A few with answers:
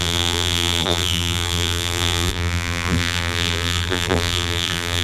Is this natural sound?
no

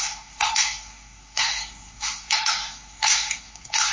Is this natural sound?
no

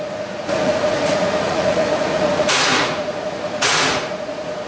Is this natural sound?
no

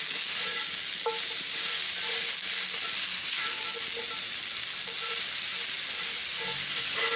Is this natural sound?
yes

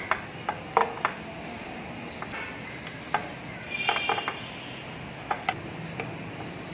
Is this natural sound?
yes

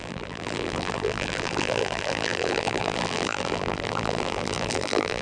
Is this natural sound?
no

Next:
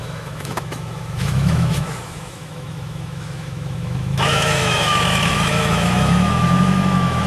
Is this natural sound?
no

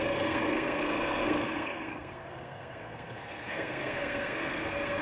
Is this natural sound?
no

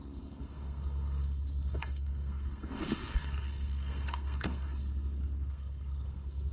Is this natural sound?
no